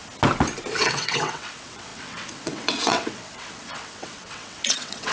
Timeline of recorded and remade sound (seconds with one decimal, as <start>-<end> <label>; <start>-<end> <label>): 0.0-0.8 recorded; 0.8-5.1 remade